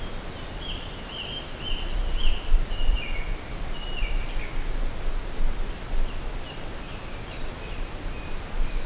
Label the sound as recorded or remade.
recorded